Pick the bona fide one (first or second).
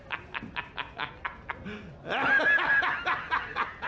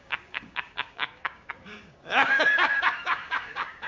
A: first